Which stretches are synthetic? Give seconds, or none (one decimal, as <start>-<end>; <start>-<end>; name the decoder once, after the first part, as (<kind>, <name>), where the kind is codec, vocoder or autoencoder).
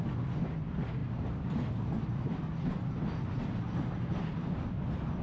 1.0-2.1 (vocoder, BigVGAN v2)